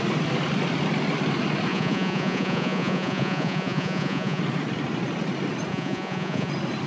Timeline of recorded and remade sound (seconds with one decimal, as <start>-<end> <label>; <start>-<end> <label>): 0.0-1.7 recorded; 1.7-4.4 remade; 4.4-5.7 recorded; 5.7-6.5 remade; 6.5-6.9 recorded